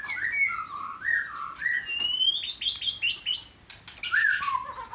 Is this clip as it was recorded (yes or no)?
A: yes